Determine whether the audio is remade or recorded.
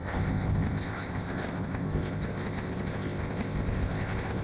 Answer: remade